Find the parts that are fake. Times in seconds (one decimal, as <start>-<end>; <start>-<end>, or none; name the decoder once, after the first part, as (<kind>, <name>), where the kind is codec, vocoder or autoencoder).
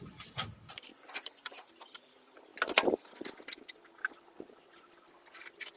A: 0.9-1.7 (vocoder, Vocos)